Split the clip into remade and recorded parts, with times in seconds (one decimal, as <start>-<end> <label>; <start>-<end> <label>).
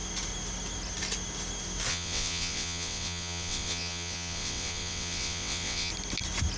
0.0-1.9 recorded; 1.9-5.9 remade; 5.9-6.6 recorded